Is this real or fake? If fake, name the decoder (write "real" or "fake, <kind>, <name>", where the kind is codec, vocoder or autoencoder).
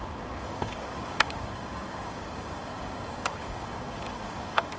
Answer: fake, codec, DAC